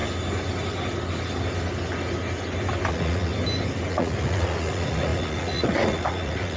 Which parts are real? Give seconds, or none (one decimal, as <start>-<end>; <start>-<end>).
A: 0.0-2.9; 3.3-3.9